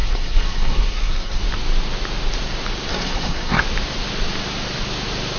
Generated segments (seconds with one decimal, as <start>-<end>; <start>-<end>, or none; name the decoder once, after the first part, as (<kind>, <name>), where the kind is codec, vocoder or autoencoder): 0.0-1.4 (codec, SNAC); 2.9-3.6